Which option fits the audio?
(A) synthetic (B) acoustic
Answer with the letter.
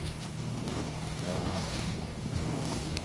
A